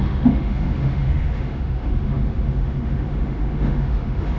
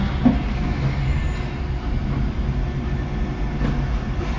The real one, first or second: second